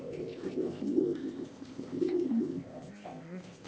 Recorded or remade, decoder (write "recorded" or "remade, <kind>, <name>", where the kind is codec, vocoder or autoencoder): remade, codec, ZipCodec